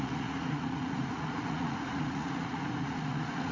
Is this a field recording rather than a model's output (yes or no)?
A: no